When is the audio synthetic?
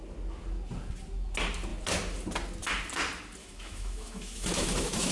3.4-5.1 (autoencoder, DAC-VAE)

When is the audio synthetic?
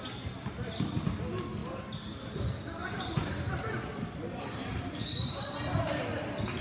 1.6-2.3 (vocoder, BigVGAN v2); 2.8-5.6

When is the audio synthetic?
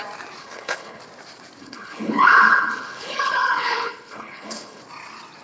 0.4-1.0 (codec, HILCodec); 1.6-4.8